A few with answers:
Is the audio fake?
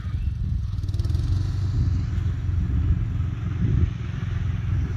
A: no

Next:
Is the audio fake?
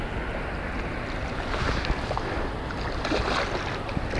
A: no